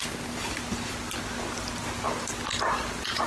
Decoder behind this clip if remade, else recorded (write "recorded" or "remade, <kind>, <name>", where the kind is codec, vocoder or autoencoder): recorded